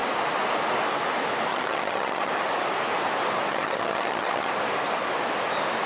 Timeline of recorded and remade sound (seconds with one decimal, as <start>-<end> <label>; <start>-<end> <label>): 0.0-1.5 recorded; 1.5-2.3 remade; 2.3-3.5 recorded; 3.5-4.5 remade; 4.5-5.9 recorded